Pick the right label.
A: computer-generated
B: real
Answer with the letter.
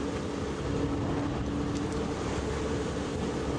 B